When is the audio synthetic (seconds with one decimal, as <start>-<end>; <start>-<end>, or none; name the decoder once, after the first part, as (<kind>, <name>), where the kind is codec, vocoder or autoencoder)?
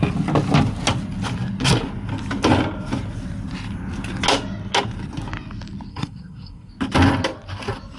5.9-6.7 (codec, SNAC)